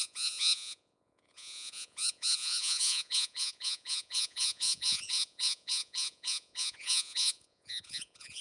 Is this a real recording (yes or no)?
no